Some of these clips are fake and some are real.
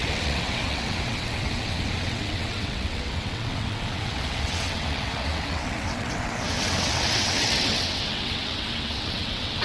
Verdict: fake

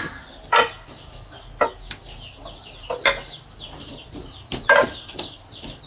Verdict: real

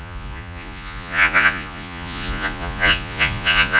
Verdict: fake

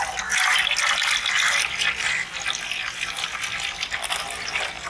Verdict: real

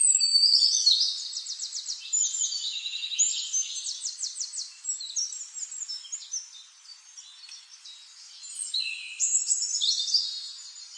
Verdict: real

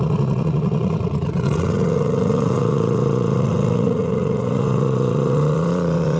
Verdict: fake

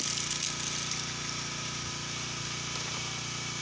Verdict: real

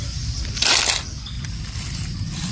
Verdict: real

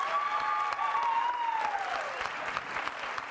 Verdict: real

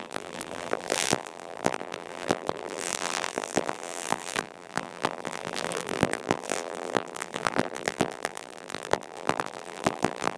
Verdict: fake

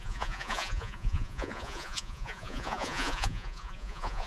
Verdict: fake